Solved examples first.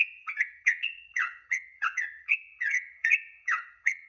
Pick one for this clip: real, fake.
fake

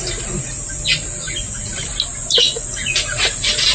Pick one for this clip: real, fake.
real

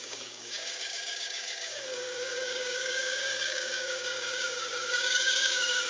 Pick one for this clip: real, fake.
fake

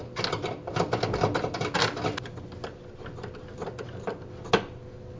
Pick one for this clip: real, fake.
real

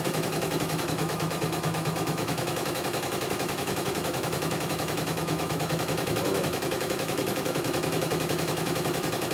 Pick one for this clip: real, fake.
fake